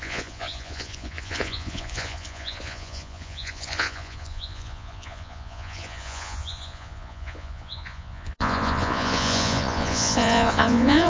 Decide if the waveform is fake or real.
fake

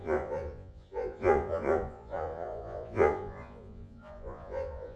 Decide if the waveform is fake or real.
fake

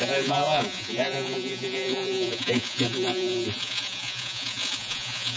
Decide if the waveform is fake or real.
fake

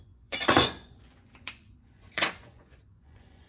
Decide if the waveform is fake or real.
fake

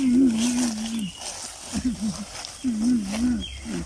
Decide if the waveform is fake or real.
real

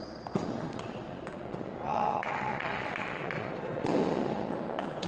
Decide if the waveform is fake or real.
fake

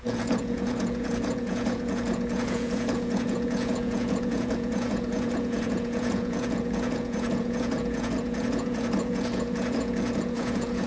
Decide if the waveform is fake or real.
fake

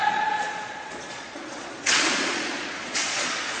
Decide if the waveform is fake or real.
fake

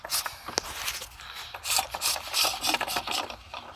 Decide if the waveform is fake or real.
real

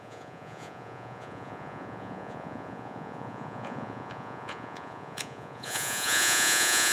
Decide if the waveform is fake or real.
fake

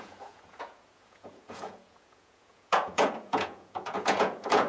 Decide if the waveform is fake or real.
fake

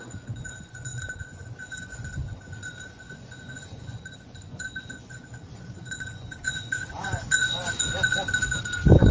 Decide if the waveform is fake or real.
fake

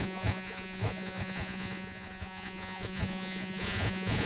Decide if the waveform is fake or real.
fake